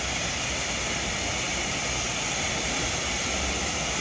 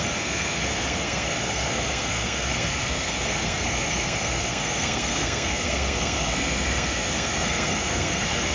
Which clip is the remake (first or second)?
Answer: second